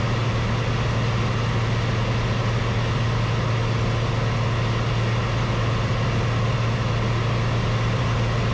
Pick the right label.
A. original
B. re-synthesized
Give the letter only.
A